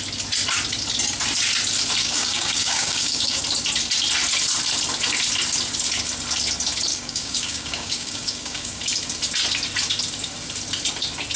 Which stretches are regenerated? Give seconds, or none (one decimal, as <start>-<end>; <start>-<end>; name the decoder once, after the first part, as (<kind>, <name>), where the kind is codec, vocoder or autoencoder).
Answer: 2.0-3.4 (codec, DAC); 6.9-8.8